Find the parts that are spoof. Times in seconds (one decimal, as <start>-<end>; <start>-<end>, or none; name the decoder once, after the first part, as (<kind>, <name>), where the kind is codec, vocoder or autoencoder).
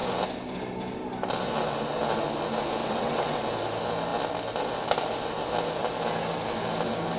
2.8-3.4 (vocoder, WaveNeXt)